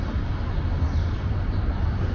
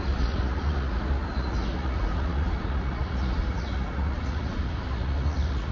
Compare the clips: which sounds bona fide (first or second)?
first